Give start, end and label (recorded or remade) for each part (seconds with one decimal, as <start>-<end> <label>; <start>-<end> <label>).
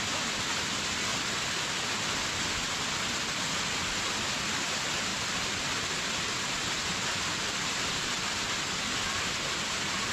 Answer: 0.0-10.1 recorded